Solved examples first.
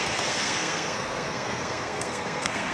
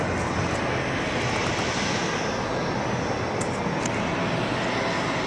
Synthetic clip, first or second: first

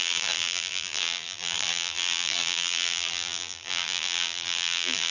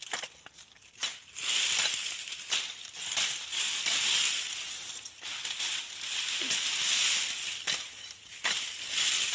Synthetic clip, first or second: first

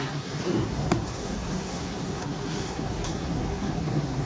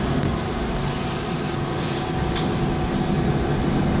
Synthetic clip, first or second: first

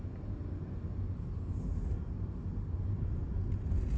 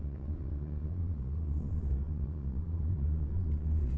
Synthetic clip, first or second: second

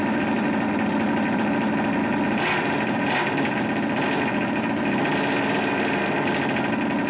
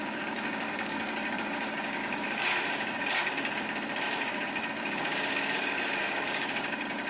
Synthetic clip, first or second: second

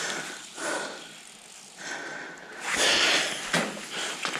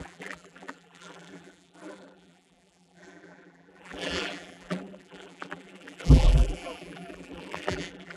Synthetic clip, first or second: second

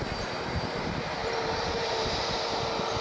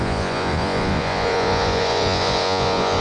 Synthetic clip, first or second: second